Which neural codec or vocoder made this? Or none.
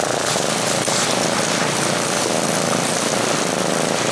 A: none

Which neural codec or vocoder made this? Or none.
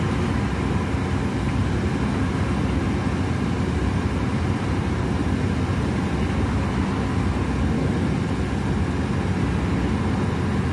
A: none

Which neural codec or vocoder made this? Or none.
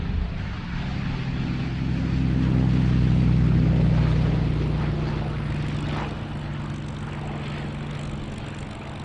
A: none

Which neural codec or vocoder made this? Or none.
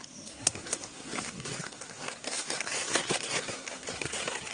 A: codec, SNAC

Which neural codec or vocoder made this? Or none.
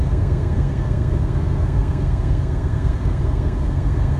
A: codec, SNAC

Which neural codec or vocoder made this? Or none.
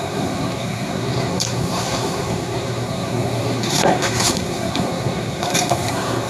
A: codec, SNAC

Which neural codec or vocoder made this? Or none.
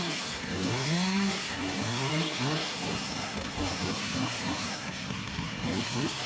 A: codec, SNAC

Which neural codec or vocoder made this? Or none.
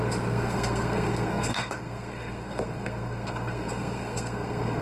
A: codec, SNAC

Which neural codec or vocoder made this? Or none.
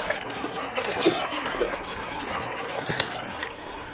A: codec, SNAC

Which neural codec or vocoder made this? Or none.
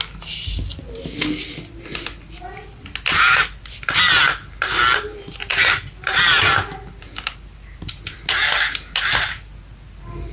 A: none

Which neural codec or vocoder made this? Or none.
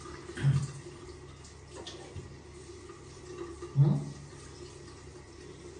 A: none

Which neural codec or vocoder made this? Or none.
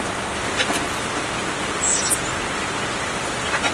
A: none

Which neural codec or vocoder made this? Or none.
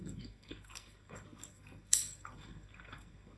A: codec, SNAC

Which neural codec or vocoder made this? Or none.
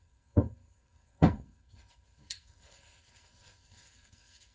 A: codec, SNAC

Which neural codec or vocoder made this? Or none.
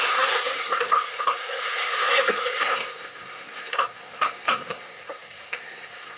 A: codec, SNAC